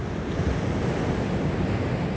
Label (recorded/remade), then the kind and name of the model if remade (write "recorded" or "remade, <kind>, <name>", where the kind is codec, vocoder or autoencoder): recorded